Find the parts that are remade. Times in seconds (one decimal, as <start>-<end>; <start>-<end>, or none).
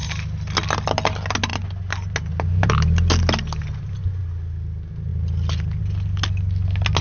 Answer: none